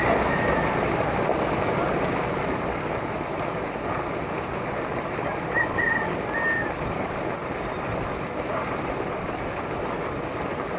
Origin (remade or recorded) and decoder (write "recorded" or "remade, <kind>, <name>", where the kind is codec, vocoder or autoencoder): recorded